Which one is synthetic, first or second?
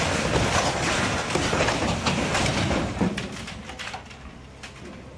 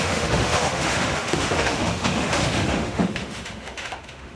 second